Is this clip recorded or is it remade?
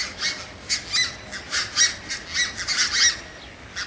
recorded